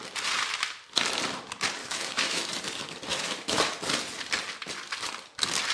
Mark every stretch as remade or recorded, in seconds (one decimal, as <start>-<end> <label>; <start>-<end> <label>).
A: 0.0-1.8 recorded; 1.8-2.5 remade; 2.5-3.1 recorded; 3.1-3.6 remade; 3.6-5.7 recorded